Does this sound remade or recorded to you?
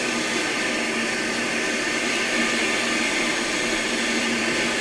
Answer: recorded